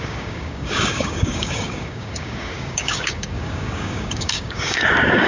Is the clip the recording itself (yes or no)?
no